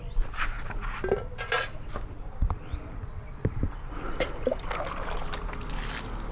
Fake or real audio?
real